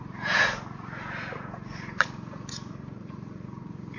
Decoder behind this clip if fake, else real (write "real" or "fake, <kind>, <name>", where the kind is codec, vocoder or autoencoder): fake, vocoder, Vocos